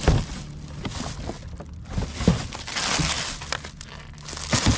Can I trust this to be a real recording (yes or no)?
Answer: yes